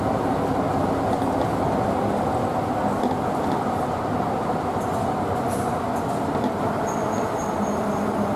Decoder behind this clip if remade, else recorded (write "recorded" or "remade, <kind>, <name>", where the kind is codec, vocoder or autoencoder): recorded